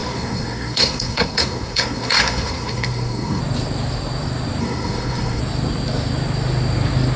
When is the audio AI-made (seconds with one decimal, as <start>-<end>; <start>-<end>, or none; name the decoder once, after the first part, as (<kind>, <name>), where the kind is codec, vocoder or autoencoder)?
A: 0.0-3.4 (codec, SNAC); 4.6-5.4

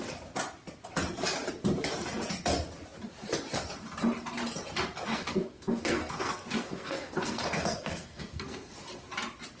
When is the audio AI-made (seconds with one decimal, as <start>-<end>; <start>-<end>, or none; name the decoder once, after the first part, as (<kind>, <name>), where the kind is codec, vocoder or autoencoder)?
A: 5.1-8.7 (codec, SNAC)

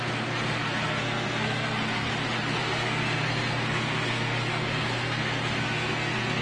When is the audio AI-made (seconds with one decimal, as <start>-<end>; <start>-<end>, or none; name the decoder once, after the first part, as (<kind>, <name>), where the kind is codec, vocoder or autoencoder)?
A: 0.0-2.1 (codec, SNAC); 2.6-6.4

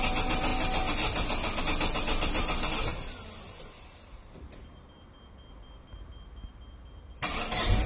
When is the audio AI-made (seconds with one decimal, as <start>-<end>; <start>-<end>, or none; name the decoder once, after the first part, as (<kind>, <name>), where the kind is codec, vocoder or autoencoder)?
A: none